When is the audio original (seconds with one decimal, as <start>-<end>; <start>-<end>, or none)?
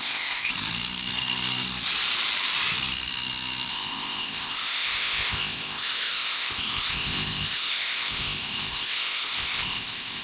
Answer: 0.5-3.7